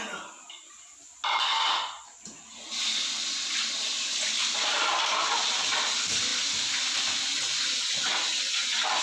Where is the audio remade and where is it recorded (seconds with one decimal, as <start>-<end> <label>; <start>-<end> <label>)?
0.0-9.0 recorded